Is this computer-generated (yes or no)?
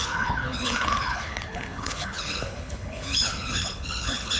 yes